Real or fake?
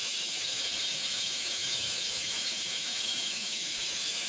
fake